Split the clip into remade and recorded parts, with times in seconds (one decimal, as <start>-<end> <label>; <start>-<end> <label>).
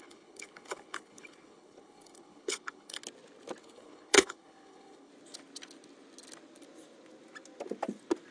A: 0.0-3.0 remade; 3.0-3.6 recorded; 3.6-5.1 remade; 5.1-8.3 recorded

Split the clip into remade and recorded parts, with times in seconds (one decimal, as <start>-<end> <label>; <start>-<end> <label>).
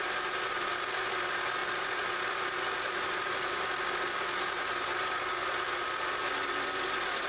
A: 0.0-7.3 recorded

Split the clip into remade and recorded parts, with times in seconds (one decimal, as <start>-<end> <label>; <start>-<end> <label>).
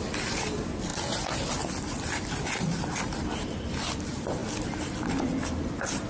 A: 0.0-6.1 recorded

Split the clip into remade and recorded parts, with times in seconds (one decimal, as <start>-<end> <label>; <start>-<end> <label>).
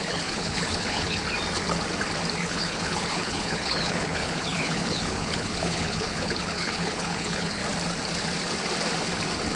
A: 0.0-1.2 remade; 1.2-2.4 recorded; 2.4-7.6 remade; 7.6-9.6 recorded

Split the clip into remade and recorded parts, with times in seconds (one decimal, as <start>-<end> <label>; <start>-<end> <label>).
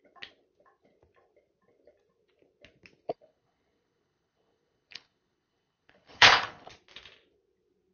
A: 0.0-3.1 recorded; 3.1-6.7 remade; 6.7-7.9 recorded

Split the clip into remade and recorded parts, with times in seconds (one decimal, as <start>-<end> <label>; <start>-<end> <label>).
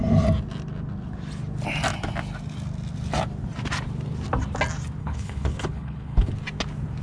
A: 0.0-5.0 recorded; 5.0-6.3 remade; 6.3-7.0 recorded